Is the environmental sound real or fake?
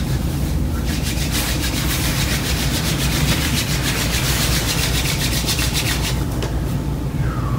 real